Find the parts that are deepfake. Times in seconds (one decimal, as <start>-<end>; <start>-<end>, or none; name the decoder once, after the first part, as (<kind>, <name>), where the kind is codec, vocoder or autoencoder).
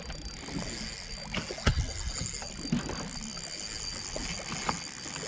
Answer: none